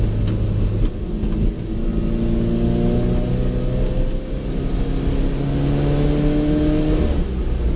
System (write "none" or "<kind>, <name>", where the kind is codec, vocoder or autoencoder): none